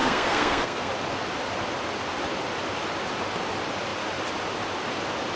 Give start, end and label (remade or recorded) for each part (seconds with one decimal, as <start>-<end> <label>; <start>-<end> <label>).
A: 0.0-0.9 remade; 0.9-5.4 recorded